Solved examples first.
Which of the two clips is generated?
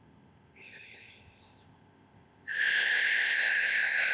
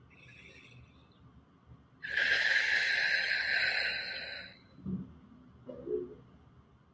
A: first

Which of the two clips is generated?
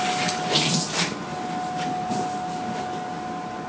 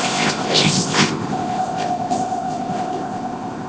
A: second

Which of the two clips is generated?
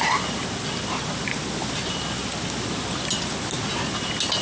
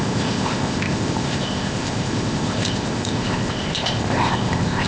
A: second